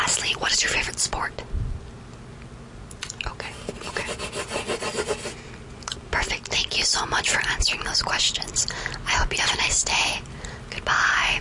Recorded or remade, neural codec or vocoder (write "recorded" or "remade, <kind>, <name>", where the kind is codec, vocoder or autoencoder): recorded